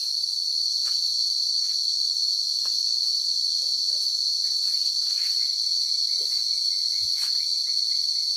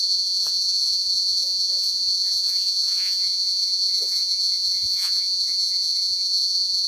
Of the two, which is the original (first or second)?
first